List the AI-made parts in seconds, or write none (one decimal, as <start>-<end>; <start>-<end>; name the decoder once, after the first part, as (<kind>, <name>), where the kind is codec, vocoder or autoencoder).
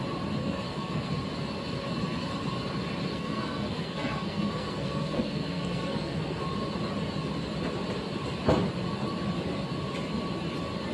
0.4-1.1 (codec, SNAC); 3.1-6.4